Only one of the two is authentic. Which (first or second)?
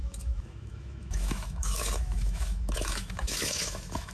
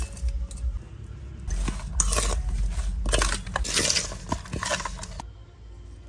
second